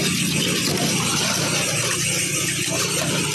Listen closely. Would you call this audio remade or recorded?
recorded